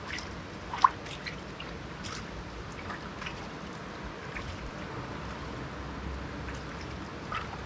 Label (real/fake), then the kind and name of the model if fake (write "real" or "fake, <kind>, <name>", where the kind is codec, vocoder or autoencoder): real